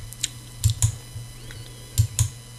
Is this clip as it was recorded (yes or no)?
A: yes